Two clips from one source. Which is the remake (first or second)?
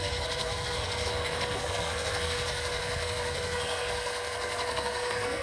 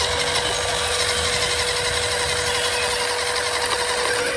first